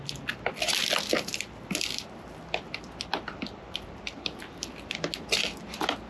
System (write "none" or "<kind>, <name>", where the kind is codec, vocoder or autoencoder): none